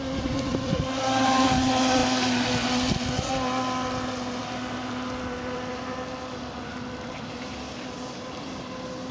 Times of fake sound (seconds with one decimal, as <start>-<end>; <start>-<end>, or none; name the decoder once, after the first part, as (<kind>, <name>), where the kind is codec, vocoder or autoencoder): none